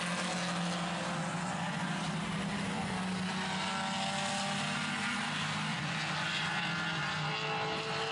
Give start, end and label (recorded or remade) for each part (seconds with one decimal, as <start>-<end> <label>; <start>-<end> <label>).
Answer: 0.0-1.3 recorded; 1.3-2.0 remade; 2.0-5.7 recorded; 5.7-6.6 remade; 6.6-8.1 recorded

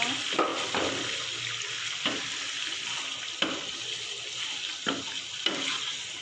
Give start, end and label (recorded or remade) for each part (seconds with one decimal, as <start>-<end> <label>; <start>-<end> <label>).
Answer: 0.0-6.2 recorded